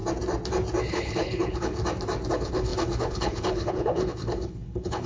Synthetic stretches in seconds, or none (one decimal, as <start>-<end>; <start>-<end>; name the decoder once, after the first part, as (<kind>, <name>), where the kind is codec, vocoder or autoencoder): 0.9-1.8 (codec, HILCodec); 2.3-5.1